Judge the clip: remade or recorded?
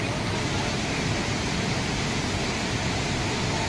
recorded